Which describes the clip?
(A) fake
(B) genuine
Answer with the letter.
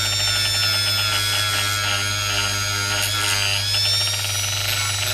B